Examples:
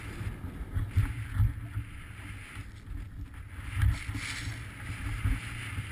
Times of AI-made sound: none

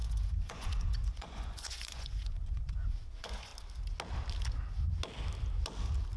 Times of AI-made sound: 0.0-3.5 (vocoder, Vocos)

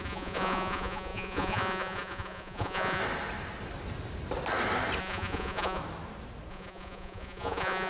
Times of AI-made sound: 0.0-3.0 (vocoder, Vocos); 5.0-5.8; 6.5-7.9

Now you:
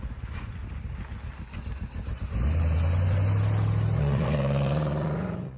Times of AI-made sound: 0.0-0.6 (vocoder, Vocos); 4.0-5.6

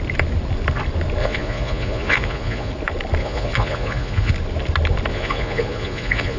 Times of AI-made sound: 1.2-2.7 (vocoder, Vocos); 3.2-4.3; 5.1-6.4